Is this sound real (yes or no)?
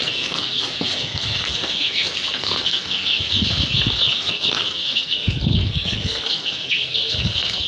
no